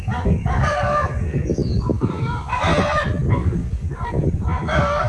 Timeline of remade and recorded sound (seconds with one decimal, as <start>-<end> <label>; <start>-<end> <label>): 0.0-2.7 remade; 2.7-3.3 recorded; 3.3-5.1 remade